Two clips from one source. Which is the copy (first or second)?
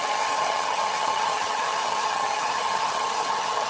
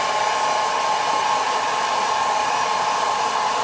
first